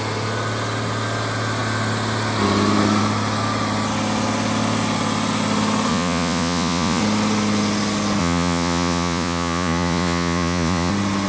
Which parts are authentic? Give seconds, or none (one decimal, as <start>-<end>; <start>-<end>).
0.0-5.9; 7.0-8.2; 10.9-11.3